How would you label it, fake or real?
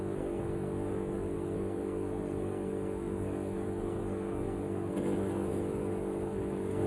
fake